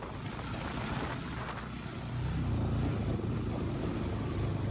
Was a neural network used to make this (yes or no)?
no